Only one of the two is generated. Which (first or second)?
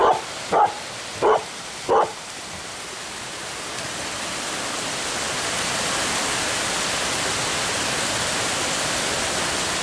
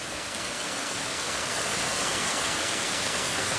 second